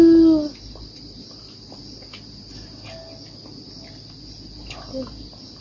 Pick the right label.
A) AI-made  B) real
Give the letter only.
B